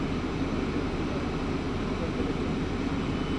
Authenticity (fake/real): real